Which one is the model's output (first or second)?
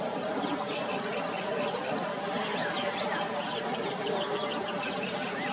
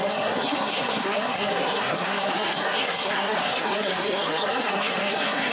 second